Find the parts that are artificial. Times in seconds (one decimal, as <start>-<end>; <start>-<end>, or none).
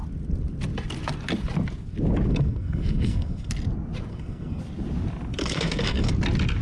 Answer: 2.3-3.5; 4.1-4.6; 5.4-6.1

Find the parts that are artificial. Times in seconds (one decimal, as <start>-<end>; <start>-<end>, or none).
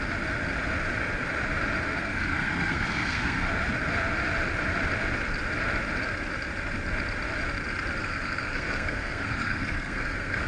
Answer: 1.9-3.5; 8.0-10.5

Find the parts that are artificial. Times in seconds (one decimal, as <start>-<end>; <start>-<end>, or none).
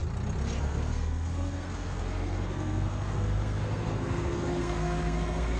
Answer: 0.6-5.6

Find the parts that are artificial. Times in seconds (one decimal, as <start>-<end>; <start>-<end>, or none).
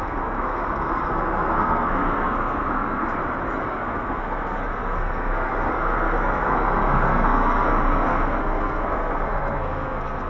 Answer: 0.0-3.2; 3.7-10.3